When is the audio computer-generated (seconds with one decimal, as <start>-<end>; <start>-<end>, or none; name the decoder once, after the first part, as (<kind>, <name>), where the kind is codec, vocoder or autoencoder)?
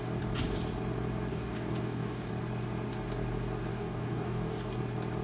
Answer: 1.3-2.3 (codec, DAC); 3.7-4.8